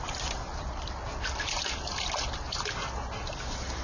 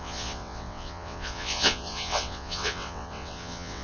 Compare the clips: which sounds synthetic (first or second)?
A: second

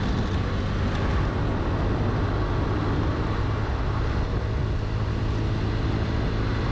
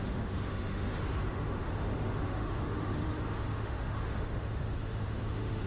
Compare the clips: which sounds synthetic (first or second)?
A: second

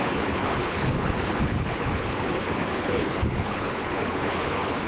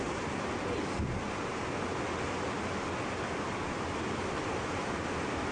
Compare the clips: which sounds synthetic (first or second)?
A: first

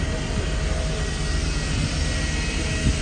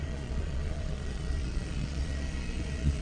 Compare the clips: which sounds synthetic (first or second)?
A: second